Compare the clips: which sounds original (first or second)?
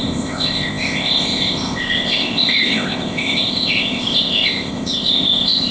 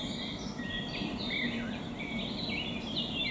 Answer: second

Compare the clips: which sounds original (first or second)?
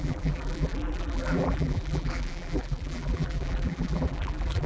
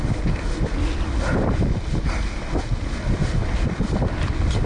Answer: second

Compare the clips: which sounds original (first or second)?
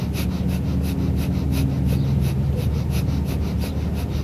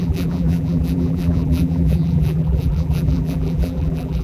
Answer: first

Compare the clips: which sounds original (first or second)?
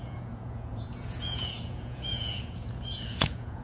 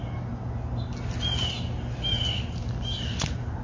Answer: second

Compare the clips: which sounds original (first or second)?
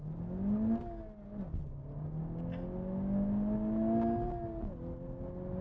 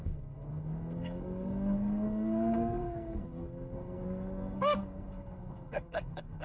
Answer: first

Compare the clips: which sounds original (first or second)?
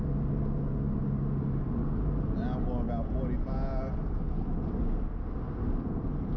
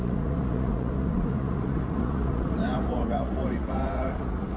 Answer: first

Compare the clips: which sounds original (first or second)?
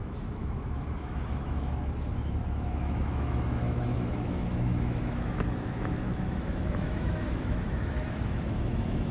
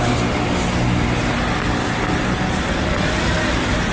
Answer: second